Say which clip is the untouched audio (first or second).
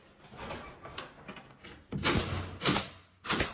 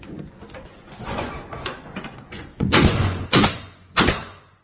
first